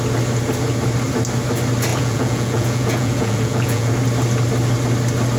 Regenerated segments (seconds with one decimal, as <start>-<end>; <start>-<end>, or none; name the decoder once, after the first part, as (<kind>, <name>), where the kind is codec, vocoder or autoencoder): 1.9-3.9 (vocoder, Vocos)